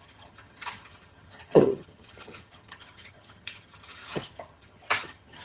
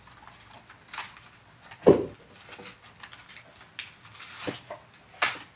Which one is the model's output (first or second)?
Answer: first